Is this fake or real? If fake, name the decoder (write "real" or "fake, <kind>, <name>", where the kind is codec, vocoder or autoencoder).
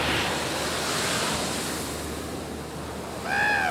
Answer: real